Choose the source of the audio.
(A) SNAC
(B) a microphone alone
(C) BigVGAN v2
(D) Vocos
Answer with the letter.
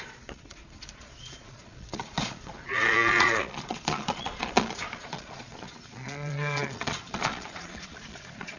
D